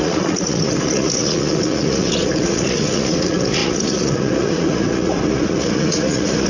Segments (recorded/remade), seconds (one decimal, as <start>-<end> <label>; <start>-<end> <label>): 0.0-6.5 remade